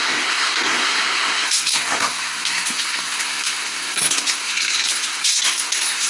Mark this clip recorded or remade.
remade